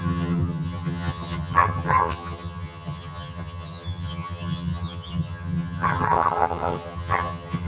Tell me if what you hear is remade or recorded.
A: remade